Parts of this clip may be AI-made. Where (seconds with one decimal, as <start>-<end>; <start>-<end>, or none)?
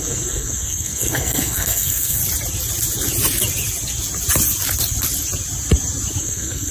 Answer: 0.0-2.2; 6.2-6.7